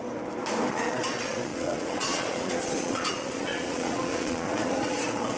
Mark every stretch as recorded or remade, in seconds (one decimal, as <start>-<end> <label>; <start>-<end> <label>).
0.0-0.7 recorded; 0.7-5.4 remade